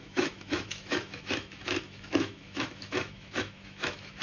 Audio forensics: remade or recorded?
remade